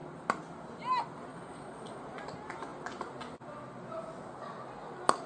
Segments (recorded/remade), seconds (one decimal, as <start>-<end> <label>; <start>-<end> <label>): 0.0-1.3 recorded; 1.3-2.0 remade; 2.0-5.3 recorded